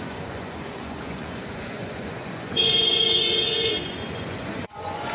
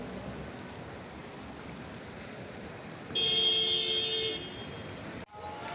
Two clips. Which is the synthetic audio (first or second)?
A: first